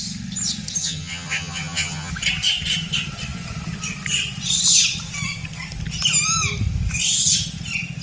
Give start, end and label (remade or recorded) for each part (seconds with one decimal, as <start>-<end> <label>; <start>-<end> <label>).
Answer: 0.0-0.8 recorded; 0.8-2.1 remade; 2.1-8.0 recorded